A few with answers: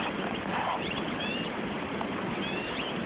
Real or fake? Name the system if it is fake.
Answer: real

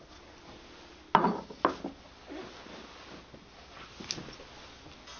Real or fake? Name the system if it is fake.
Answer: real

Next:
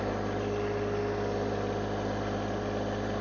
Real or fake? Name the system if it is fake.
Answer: real